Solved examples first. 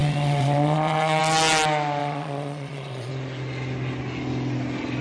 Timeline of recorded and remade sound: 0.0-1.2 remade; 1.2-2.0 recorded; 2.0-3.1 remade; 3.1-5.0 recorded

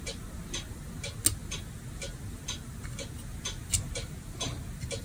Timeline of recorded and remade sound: 0.0-5.0 recorded

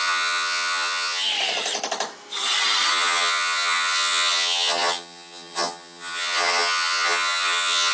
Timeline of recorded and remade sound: 0.0-1.3 remade; 1.3-2.9 recorded; 2.9-7.9 remade

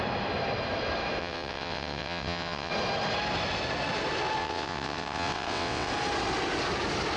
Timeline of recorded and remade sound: 0.0-1.2 recorded; 1.2-2.7 remade; 2.7-4.4 recorded; 4.4-5.9 remade; 5.9-7.2 recorded

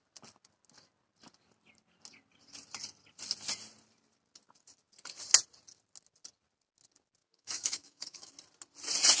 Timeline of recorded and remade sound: 0.0-7.2 recorded; 7.2-8.3 remade; 8.3-9.2 recorded

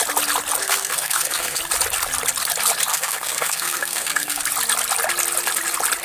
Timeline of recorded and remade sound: 0.0-0.6 recorded; 0.6-1.6 remade; 1.6-2.9 recorded; 2.9-4.4 remade; 4.4-6.0 recorded

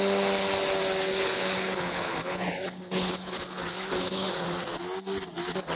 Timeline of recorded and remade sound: 0.0-1.1 recorded; 1.1-4.4 remade; 4.4-5.8 recorded